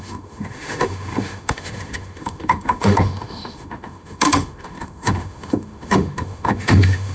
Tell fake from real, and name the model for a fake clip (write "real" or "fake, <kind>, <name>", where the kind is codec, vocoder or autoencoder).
fake, autoencoder, DAC-VAE